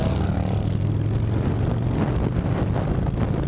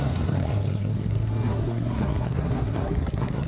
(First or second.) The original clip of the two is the first